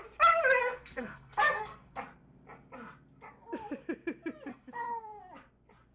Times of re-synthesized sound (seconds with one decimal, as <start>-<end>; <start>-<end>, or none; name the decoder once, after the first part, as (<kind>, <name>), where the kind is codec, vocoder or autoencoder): 0.6-2.0 (codec, SNAC); 4.5-5.2